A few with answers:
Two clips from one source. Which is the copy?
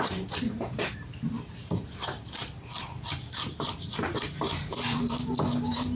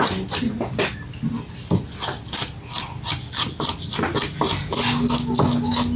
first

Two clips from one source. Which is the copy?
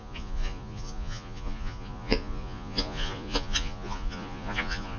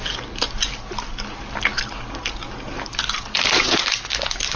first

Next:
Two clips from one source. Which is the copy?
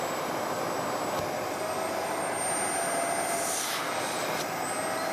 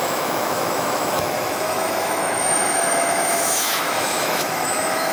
second